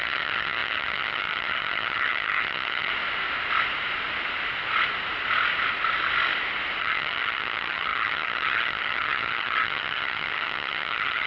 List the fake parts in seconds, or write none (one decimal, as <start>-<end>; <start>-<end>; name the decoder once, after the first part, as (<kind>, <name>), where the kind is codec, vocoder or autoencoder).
0.0-2.9 (vocoder, HiFi-GAN); 6.8-11.3